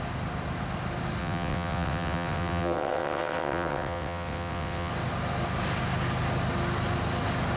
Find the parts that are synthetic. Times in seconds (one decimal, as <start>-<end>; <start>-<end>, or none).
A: 1.2-4.9